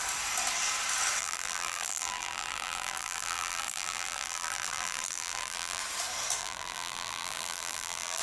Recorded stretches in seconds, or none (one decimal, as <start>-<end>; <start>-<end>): 0.0-1.2; 5.8-6.4